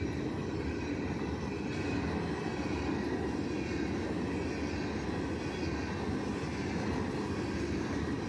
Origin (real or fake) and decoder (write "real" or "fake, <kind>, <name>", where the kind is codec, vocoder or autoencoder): real